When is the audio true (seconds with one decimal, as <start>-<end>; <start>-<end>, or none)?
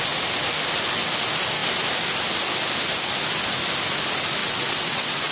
0.0-4.4